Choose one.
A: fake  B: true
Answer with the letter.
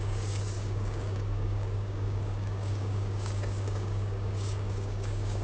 A